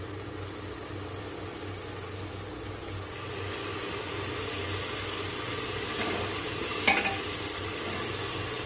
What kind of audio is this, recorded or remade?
recorded